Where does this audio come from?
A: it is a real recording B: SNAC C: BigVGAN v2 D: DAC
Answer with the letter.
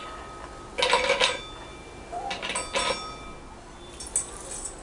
A